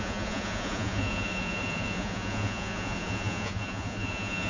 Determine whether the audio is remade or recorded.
remade